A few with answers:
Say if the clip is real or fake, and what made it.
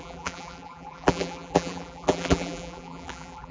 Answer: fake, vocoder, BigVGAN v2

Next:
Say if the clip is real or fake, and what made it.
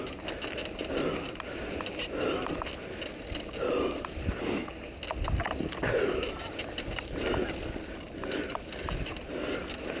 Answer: real